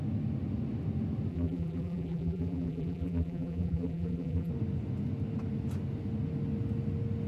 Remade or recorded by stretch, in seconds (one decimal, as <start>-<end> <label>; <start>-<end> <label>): 0.0-1.3 recorded; 1.3-4.5 remade; 4.5-7.3 recorded